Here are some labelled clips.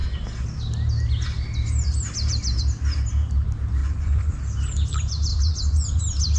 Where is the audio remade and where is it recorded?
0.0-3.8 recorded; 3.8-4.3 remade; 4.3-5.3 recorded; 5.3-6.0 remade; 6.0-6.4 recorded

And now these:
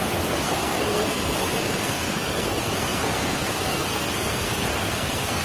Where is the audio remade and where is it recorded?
0.0-5.4 remade

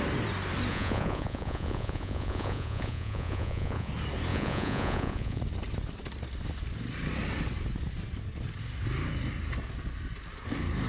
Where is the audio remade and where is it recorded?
0.0-0.7 recorded; 0.7-3.9 remade; 3.9-4.3 recorded; 4.3-5.4 remade; 5.4-10.9 recorded

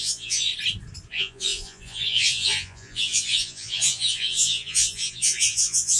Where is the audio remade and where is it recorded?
0.0-0.5 remade; 0.5-1.1 recorded; 1.1-6.0 remade

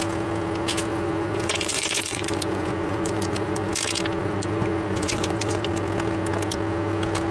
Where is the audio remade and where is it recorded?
0.0-0.9 recorded; 0.9-3.7 remade; 3.7-4.2 recorded; 4.2-5.7 remade; 5.7-7.3 recorded

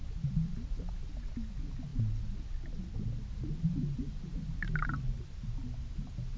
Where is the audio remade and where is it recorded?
0.0-6.4 recorded

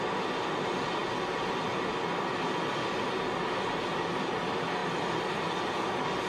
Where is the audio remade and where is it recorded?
0.0-4.8 recorded; 4.8-5.3 remade; 5.3-6.3 recorded

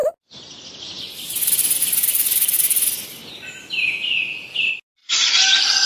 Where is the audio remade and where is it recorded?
0.0-5.0 recorded; 5.0-5.9 remade